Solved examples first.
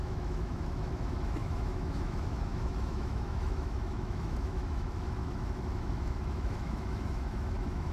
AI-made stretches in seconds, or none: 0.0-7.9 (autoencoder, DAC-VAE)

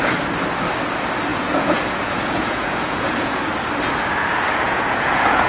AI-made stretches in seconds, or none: 1.3-3.4 (vocoder, Vocos); 4.2-5.5

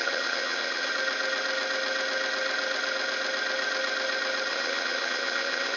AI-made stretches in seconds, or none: 0.0-0.9 (vocoder, HiFi-GAN); 4.5-5.8

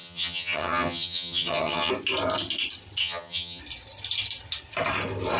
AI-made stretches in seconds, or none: 0.0-1.9 (vocoder, HiFi-GAN); 3.0-3.6